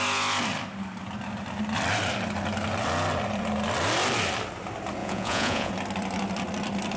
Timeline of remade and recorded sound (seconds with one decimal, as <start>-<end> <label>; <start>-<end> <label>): 0.0-5.0 recorded; 5.0-5.7 remade; 5.7-7.0 recorded